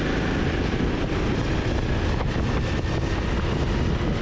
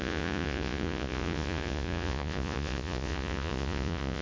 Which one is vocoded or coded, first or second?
second